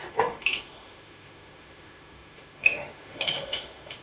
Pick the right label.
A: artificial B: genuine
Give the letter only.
A